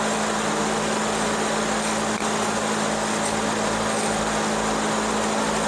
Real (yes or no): yes